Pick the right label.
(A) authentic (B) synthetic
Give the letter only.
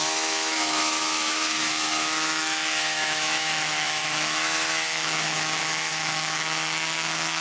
B